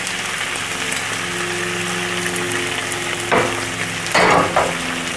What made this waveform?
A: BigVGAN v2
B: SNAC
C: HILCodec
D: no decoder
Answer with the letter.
D